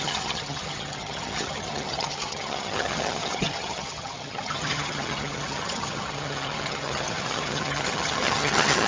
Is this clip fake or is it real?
fake